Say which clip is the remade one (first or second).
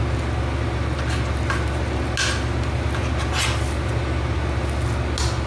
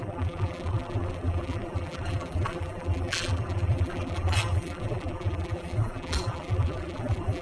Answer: second